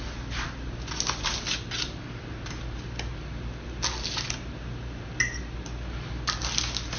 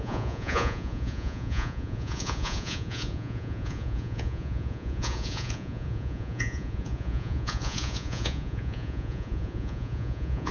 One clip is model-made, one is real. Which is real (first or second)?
first